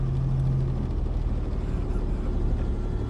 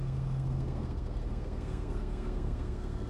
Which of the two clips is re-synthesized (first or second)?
second